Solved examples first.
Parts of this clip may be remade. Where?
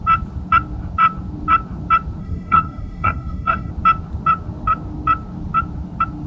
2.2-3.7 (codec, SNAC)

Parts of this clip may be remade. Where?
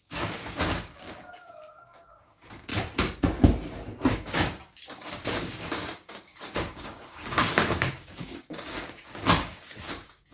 0.0-2.7 (codec, DAC); 4.1-10.3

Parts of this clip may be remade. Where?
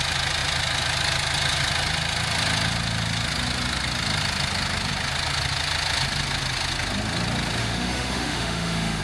7.6-9.0 (autoencoder, DAC-VAE)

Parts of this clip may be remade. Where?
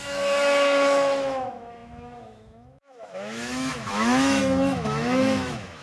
0.0-5.8 (autoencoder, DAC-VAE)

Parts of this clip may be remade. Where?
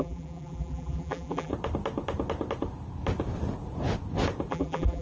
0.0-1.5 (vocoder, BigVGAN v2); 4.5-5.0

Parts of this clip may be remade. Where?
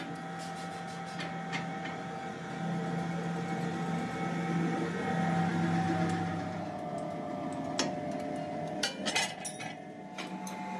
none